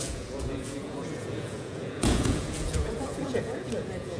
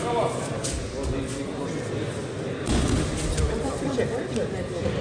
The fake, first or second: first